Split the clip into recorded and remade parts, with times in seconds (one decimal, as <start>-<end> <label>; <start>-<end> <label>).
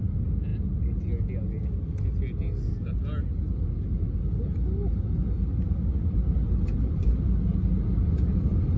0.0-8.8 recorded